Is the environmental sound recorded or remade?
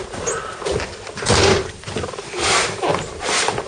recorded